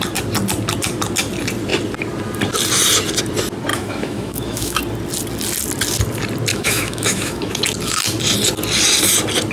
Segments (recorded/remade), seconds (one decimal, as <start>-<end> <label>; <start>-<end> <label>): 0.0-3.7 recorded; 3.7-4.8 remade; 4.8-6.5 recorded; 6.5-7.6 remade; 7.6-9.5 recorded